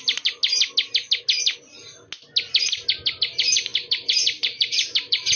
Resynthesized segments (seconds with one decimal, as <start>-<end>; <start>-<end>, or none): 0.0-0.4; 3.1-5.4